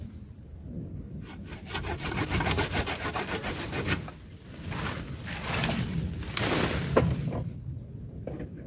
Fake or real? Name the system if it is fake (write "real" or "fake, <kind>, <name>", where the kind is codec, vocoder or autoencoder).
real